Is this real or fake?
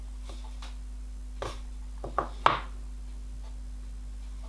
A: real